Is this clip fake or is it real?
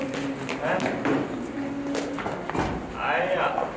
real